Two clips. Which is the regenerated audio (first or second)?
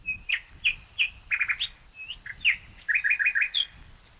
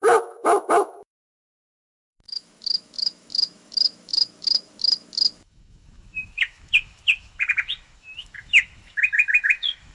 second